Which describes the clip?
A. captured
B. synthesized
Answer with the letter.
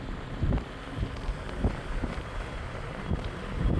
A